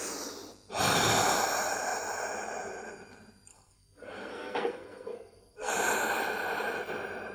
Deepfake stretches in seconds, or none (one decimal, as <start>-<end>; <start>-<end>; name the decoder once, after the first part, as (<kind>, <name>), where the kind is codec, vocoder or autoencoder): 3.5-5.7 (codec, SNAC)